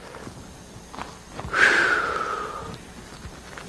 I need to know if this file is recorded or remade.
recorded